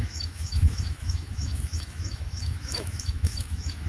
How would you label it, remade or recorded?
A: remade